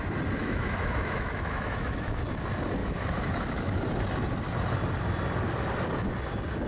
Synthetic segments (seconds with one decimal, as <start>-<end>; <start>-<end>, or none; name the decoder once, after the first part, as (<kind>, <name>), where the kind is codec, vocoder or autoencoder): 0.4-2.2 (autoencoder, DAC-VAE); 2.8-3.8